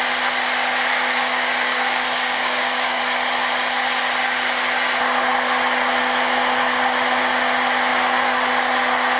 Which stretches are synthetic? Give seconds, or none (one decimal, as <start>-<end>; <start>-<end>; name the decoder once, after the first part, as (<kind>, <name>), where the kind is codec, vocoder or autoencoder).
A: 0.9-3.0 (codec, DAC)